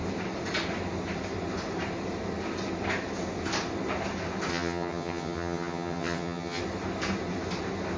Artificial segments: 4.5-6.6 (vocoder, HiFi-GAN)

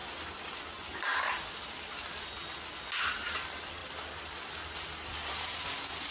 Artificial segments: 1.1-1.9 (vocoder, BigVGAN v2); 3.8-5.3